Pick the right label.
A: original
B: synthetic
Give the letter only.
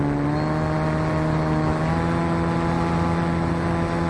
A